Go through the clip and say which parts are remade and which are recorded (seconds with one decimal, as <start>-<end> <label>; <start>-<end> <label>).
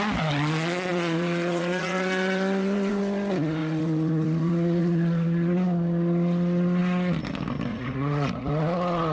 0.0-0.9 recorded; 0.9-3.0 remade; 3.0-3.6 recorded; 3.6-4.8 remade; 4.8-7.7 recorded; 7.7-8.5 remade; 8.5-9.1 recorded